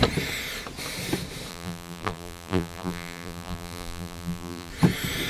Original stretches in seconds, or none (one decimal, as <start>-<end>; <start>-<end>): 0.0-1.5; 4.7-5.3